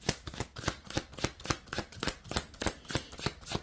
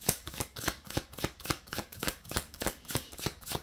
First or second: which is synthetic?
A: second